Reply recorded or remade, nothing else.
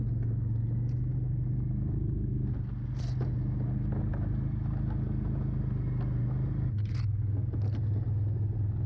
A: recorded